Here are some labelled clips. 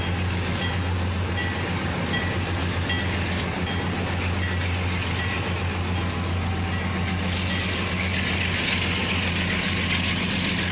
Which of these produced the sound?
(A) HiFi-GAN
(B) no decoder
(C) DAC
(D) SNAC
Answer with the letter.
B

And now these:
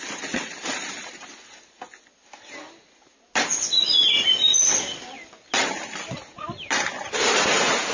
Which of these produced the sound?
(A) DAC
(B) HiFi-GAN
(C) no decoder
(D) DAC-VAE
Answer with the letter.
C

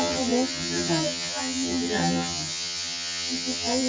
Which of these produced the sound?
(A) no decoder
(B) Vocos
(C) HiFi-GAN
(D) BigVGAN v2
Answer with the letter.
C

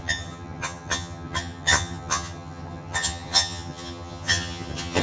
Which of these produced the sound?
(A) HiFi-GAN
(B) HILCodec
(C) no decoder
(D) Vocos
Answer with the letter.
A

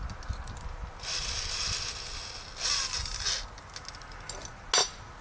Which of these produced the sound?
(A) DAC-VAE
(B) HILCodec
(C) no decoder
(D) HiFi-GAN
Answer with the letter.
C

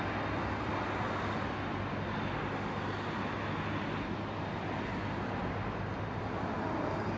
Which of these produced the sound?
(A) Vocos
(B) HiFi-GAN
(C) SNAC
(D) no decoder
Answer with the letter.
D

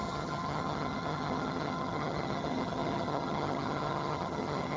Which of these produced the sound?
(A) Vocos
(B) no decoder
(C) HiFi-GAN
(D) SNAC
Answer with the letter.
C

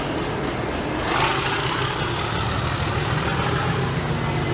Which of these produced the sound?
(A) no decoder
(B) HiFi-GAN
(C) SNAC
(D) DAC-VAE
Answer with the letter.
A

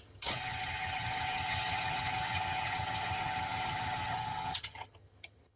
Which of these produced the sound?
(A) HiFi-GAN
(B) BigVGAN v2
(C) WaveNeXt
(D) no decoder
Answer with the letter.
A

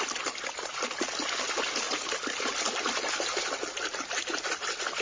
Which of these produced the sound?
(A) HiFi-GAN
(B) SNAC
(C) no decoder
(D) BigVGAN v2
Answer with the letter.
C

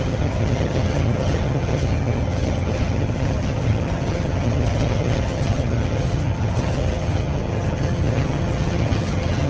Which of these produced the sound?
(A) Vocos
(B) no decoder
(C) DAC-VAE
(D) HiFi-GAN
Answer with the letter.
D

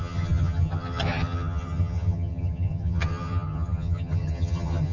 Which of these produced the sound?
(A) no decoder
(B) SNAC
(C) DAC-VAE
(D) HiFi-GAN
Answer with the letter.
D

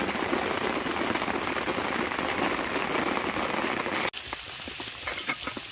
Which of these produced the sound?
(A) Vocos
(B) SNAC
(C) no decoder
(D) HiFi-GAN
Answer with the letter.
C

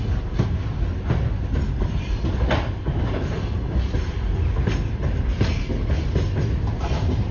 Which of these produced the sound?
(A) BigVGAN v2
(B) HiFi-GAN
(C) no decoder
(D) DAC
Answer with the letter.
C